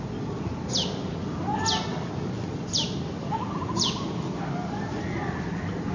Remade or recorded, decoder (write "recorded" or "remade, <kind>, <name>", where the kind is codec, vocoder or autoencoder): recorded